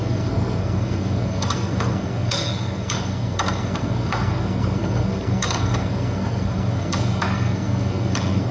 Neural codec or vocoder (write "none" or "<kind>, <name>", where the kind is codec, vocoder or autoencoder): codec, SNAC